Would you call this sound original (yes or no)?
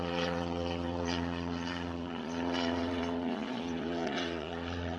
no